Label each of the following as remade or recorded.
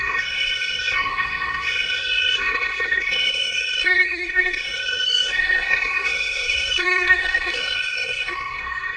remade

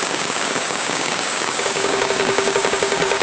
remade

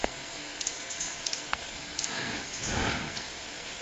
remade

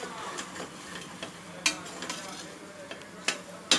recorded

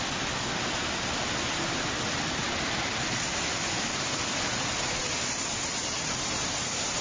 recorded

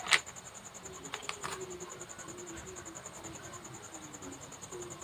recorded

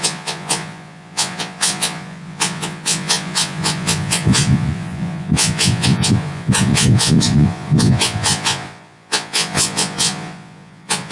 remade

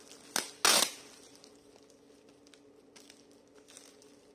recorded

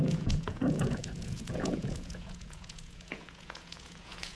remade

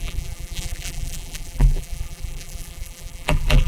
remade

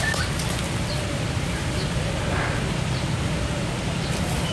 recorded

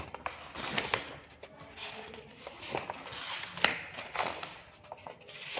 recorded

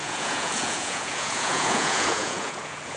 remade